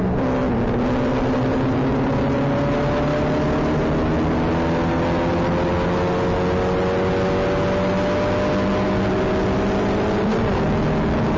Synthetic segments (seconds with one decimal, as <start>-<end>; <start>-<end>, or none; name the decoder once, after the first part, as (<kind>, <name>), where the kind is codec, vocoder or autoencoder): none